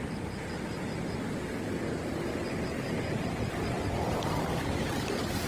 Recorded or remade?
recorded